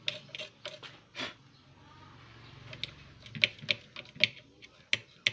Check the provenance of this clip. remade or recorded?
recorded